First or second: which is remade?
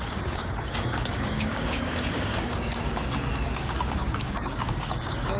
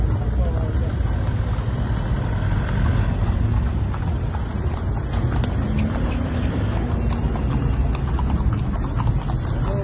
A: first